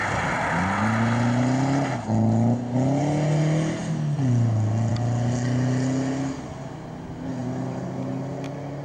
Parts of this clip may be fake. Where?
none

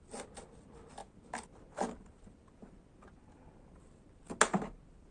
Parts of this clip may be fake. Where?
none

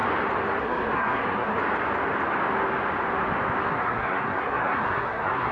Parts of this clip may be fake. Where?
0.6-1.6 (codec, SNAC); 3.7-5.5

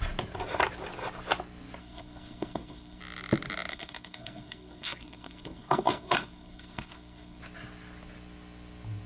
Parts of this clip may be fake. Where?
1.8-3.0 (codec, SNAC); 3.7-7.4

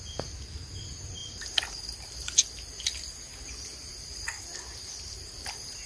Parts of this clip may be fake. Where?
none

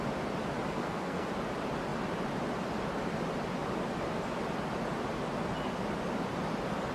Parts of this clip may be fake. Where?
0.8-1.3 (codec, SNAC)

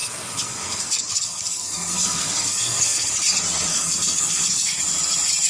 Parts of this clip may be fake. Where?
0.0-3.1 (codec, SNAC); 3.7-4.8